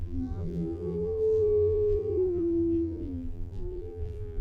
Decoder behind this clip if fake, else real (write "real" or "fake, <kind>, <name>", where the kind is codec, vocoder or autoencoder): fake, vocoder, BigVGAN v2